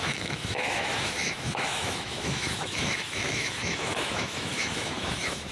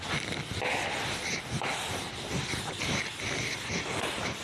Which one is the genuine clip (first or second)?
second